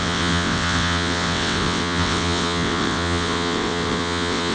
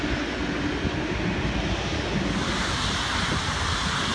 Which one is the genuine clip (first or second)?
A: second